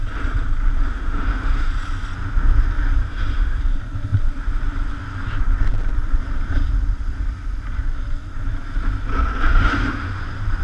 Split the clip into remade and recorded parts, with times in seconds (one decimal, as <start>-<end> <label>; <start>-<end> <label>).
0.0-0.9 recorded; 0.9-1.7 remade; 1.7-3.0 recorded; 3.0-3.6 remade; 3.6-9.5 recorded; 9.5-10.2 remade; 10.2-10.6 recorded

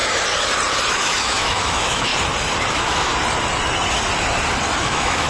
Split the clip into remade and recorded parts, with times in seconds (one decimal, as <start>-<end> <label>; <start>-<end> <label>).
0.0-0.9 recorded; 0.9-2.1 remade; 2.1-2.7 recorded; 2.7-3.1 remade; 3.1-4.8 recorded; 4.8-5.3 remade

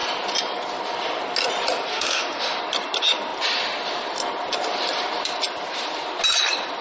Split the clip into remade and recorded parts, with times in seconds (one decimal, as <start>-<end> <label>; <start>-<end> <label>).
0.0-1.9 recorded; 1.9-2.6 remade; 2.6-6.8 recorded

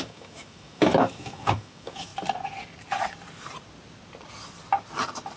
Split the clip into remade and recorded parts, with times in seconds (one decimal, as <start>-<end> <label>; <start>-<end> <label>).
0.0-2.1 remade; 2.1-5.4 recorded

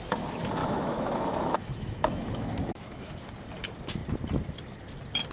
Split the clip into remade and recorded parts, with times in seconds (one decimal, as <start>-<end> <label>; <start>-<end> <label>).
0.0-0.6 recorded; 0.6-3.2 remade; 3.2-5.3 recorded

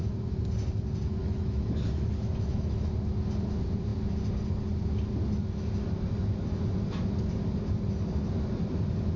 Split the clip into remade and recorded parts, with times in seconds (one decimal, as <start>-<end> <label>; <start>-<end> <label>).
0.0-1.2 recorded; 1.2-2.9 remade; 2.9-9.2 recorded

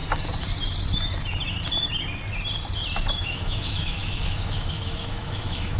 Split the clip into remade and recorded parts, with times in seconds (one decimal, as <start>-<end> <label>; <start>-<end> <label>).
0.0-3.1 recorded; 3.1-5.8 remade